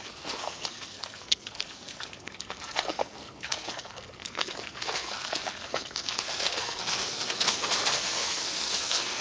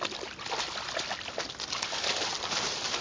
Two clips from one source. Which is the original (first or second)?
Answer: second